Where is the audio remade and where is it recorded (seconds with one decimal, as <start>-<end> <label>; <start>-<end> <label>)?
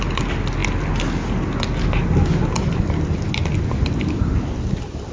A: 0.0-5.1 recorded